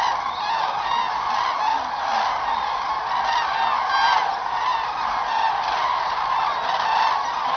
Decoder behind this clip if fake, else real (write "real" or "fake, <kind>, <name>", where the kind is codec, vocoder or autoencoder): real